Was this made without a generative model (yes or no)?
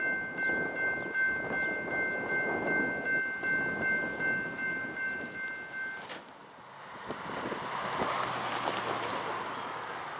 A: yes